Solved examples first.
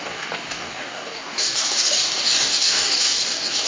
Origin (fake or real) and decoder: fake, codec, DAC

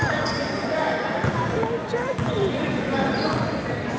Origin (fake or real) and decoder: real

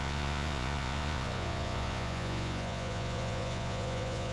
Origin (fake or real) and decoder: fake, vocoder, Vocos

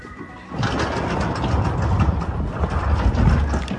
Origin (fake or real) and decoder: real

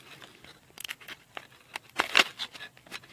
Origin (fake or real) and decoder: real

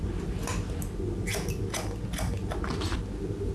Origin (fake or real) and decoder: real